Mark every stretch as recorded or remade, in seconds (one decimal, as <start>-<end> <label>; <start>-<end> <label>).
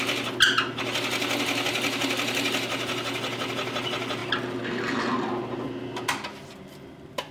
0.0-7.3 recorded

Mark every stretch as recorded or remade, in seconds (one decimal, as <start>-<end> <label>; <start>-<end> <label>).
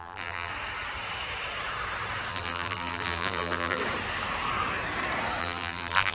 0.0-0.5 remade; 0.5-2.3 recorded; 2.3-3.8 remade; 3.8-5.4 recorded; 5.4-6.1 remade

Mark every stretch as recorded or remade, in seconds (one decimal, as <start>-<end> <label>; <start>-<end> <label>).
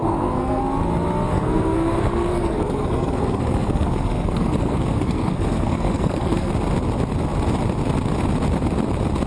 0.0-0.6 remade; 0.6-1.3 recorded; 1.3-6.5 remade; 6.5-9.3 recorded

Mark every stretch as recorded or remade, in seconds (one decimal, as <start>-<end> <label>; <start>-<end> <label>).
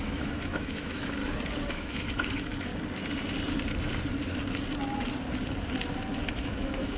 0.0-1.2 remade; 1.2-1.7 recorded; 1.7-2.7 remade; 2.7-6.3 recorded; 6.3-7.0 remade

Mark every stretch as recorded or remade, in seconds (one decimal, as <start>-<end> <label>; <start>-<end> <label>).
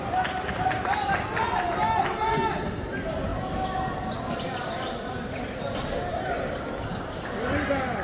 0.0-8.0 recorded